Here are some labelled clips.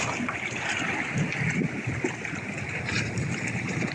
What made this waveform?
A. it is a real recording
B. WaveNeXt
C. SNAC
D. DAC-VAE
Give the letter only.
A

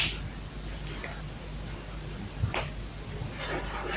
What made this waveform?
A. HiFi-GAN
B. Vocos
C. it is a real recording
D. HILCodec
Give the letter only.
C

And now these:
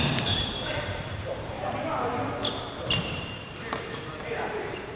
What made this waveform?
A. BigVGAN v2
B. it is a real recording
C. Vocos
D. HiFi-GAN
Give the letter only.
A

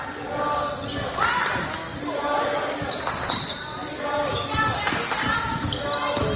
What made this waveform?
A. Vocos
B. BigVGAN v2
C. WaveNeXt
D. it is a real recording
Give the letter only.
D